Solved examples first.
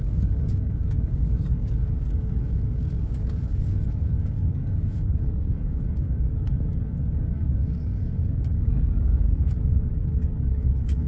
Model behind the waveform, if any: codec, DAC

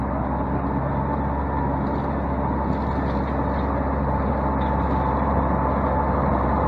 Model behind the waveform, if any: none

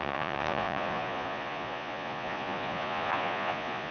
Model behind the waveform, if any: vocoder, Vocos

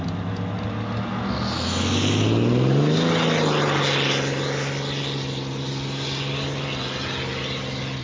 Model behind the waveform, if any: none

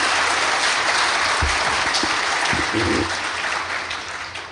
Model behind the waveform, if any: none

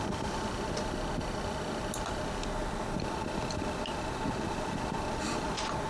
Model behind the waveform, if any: none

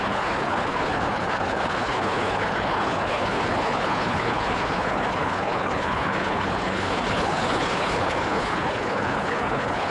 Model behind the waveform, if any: codec, HILCodec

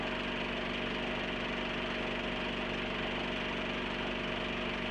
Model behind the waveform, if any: none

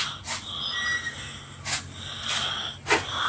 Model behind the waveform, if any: none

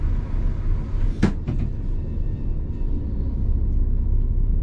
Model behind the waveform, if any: none